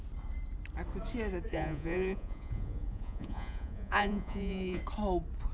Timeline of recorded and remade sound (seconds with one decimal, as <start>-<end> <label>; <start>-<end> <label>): 0.0-1.5 recorded; 1.5-4.8 remade; 4.8-5.5 recorded